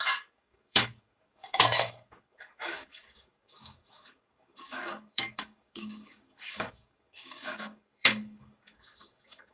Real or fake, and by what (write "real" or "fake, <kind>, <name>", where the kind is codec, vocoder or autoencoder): fake, codec, DAC